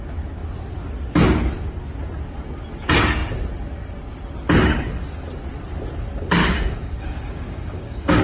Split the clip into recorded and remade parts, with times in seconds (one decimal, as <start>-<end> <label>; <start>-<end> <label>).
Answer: 0.0-6.4 recorded; 6.4-8.2 remade